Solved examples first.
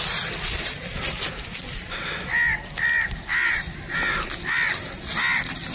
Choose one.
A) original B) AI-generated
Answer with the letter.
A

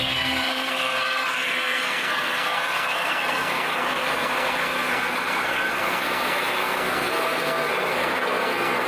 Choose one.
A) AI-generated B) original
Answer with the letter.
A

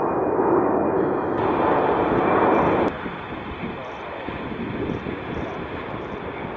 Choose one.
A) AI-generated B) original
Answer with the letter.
B